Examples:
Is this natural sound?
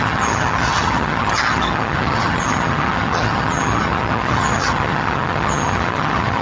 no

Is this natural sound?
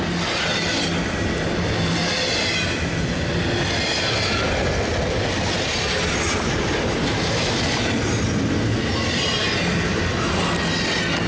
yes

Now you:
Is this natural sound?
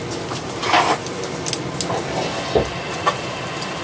yes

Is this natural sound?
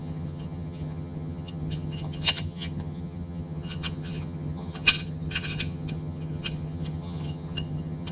no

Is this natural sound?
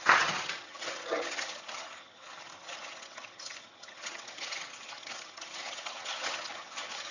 no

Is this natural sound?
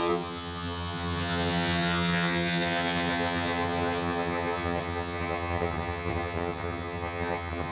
no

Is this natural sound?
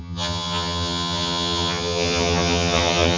no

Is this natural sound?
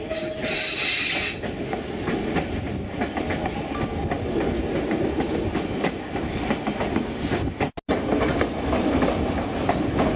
yes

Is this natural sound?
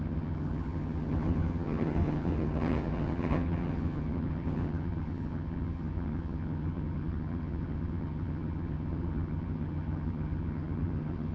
no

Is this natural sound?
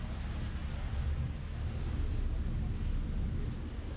yes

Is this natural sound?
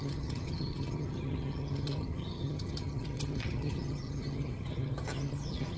no